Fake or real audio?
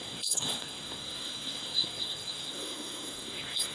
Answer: fake